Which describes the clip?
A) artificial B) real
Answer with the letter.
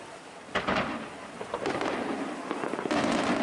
B